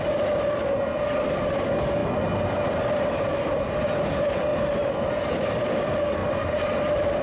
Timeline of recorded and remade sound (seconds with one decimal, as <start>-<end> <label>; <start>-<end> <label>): 0.0-7.2 recorded